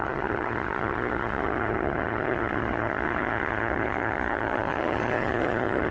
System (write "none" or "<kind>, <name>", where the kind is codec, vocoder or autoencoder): vocoder, HiFi-GAN